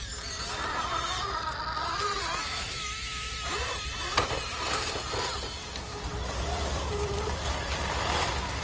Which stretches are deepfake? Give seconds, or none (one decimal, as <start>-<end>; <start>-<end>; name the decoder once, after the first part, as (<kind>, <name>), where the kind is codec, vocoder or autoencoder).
2.4-3.3 (autoencoder, DAC-VAE)